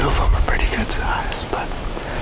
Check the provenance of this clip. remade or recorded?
recorded